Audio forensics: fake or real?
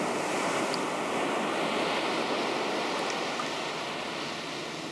real